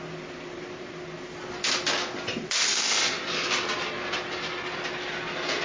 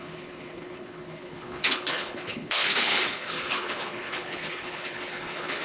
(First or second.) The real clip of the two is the first